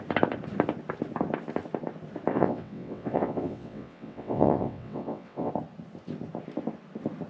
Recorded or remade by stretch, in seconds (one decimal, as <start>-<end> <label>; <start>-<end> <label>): 0.0-2.3 recorded; 2.3-5.5 remade; 5.5-7.3 recorded